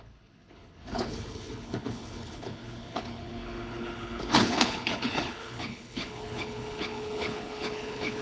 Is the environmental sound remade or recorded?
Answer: remade